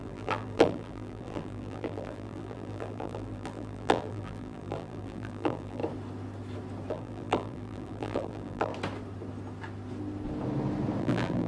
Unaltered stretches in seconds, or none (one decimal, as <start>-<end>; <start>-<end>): 5.8-6.9; 8.7-11.0